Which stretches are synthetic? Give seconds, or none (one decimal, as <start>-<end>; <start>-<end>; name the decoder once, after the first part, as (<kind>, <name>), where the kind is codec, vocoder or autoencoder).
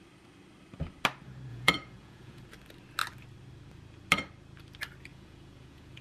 1.5-2.4 (vocoder, Vocos); 5.1-6.0